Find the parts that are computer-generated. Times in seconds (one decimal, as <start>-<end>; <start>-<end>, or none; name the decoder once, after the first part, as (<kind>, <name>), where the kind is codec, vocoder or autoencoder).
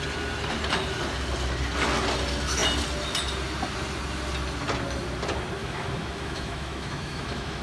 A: 5.6-7.6 (autoencoder, DAC-VAE)